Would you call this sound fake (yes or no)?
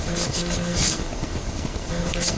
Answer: yes